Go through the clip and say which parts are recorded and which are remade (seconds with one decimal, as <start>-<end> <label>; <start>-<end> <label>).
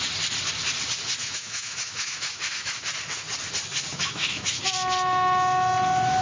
0.0-1.2 recorded; 1.2-2.8 remade; 2.8-3.9 recorded; 3.9-4.6 remade; 4.6-6.2 recorded